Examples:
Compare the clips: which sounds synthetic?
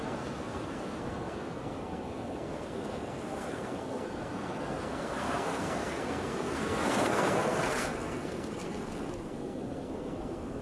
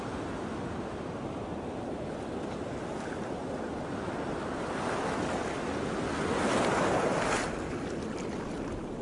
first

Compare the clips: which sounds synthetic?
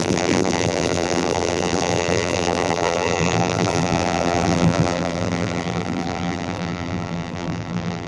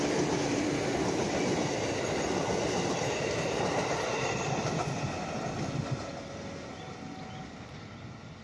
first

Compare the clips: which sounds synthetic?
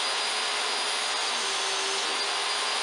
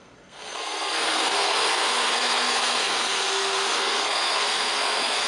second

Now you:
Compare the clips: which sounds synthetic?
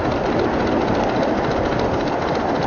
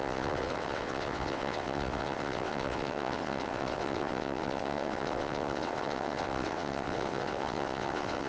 second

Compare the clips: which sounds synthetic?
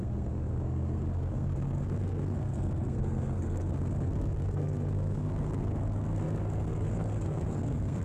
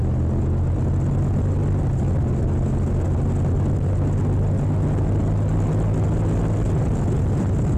first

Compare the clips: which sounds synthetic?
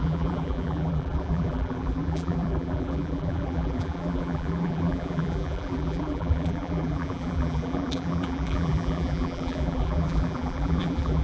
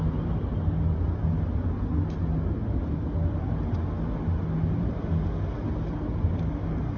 first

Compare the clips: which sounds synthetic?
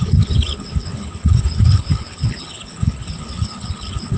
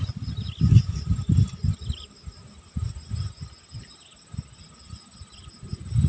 first